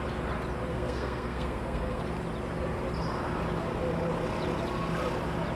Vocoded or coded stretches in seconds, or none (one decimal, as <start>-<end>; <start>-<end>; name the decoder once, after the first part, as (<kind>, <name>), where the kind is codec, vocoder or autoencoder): 0.7-2.0 (codec, SNAC)